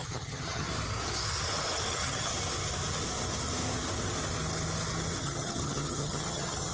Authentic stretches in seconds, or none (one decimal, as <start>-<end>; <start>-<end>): 0.7-1.9; 2.3-5.2